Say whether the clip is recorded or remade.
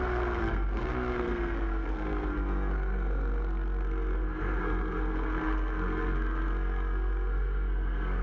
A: remade